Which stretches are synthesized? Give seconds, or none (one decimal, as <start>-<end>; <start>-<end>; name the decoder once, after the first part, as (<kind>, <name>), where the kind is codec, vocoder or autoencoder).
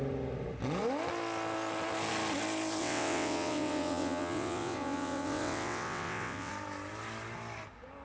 2.8-6.5 (vocoder, WaveNeXt)